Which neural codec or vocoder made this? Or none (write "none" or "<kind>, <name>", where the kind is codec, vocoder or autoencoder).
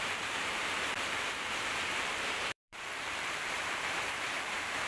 vocoder, BigVGAN v2